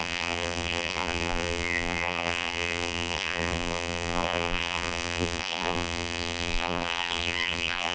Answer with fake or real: fake